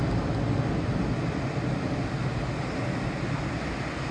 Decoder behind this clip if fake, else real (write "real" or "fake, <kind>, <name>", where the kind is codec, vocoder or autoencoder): real